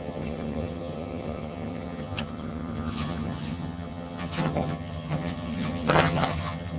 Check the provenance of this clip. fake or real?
fake